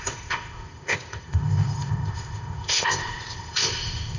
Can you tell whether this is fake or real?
fake